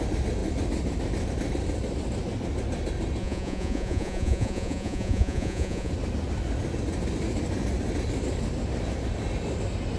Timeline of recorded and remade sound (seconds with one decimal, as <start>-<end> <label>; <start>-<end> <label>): 0.0-3.2 recorded; 3.2-5.9 remade; 5.9-10.0 recorded